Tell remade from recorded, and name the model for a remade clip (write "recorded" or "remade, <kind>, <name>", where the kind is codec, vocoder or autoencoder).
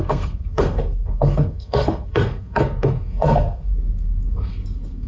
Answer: remade, codec, SNAC